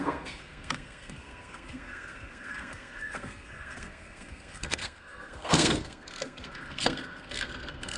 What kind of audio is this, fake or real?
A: fake